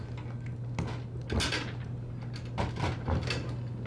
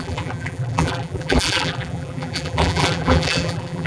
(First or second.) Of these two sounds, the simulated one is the second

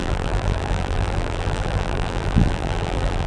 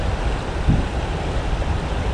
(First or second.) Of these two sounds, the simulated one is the first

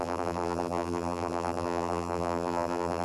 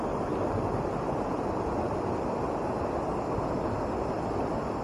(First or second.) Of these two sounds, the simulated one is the first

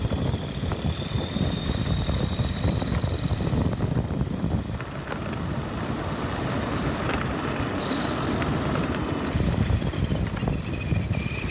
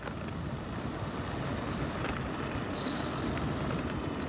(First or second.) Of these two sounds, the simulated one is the first